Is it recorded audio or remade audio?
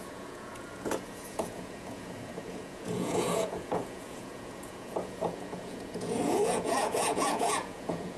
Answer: remade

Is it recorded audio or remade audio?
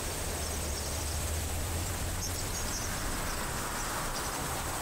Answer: remade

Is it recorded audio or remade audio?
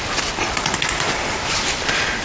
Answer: recorded